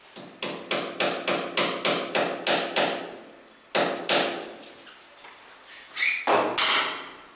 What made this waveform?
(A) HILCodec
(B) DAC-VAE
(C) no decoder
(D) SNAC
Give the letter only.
C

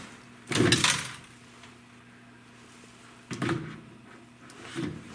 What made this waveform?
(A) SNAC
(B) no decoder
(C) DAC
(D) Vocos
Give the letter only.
B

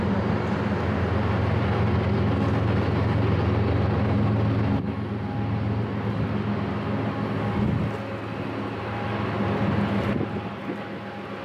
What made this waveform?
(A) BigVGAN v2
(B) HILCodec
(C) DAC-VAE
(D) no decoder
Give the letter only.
D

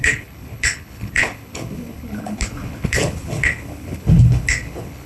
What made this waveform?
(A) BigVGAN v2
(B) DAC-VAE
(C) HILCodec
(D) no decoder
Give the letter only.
C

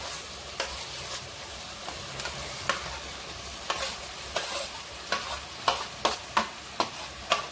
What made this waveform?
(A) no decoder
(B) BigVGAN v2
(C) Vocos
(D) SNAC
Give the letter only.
A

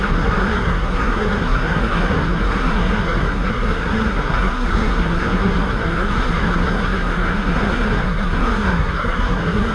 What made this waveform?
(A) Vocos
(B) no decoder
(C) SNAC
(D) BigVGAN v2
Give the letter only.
C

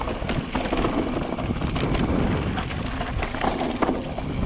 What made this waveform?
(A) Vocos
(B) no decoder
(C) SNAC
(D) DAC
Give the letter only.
B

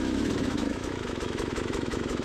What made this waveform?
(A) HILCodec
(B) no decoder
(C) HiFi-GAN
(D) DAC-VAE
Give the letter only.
D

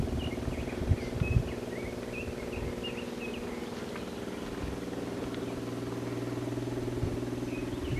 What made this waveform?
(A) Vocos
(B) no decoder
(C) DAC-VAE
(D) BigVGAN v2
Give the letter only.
B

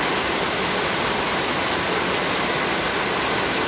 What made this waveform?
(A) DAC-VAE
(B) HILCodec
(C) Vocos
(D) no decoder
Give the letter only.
D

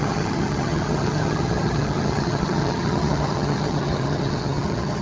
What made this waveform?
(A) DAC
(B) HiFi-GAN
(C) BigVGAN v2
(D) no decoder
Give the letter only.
B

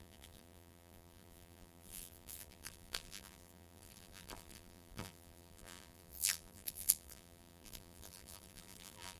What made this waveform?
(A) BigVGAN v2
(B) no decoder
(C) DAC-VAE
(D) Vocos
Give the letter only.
A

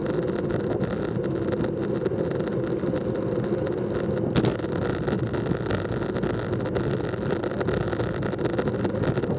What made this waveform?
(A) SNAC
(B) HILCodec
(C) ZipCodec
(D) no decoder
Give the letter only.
D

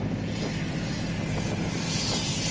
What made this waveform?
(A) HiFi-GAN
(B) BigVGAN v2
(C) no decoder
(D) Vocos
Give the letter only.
C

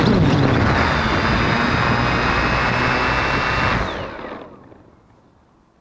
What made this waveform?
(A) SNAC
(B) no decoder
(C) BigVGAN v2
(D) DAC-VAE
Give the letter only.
B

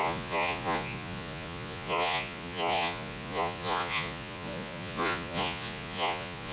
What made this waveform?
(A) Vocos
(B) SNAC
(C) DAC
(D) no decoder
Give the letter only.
A